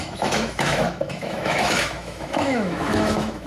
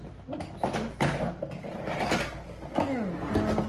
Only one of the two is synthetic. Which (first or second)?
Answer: first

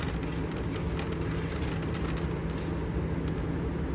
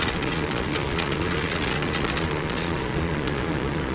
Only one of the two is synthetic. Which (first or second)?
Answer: second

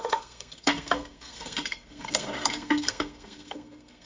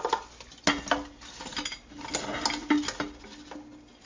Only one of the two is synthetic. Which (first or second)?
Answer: first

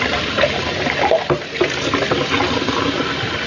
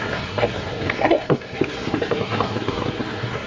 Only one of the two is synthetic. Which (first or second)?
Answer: second